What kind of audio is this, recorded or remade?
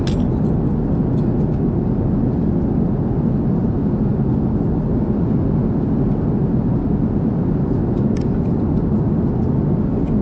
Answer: recorded